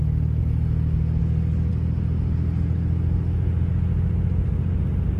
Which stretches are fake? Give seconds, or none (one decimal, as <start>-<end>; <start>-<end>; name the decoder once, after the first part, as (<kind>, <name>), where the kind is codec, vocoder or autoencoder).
none